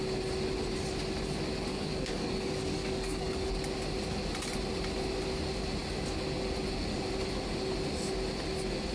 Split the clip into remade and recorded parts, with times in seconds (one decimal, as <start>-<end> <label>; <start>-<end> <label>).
0.0-1.7 recorded; 1.7-3.5 remade; 3.5-8.9 recorded

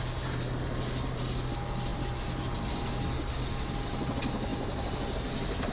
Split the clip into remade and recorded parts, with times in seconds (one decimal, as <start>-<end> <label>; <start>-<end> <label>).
0.0-5.7 recorded

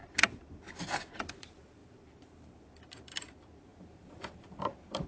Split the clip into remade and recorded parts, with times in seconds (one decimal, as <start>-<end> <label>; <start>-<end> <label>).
0.0-5.1 remade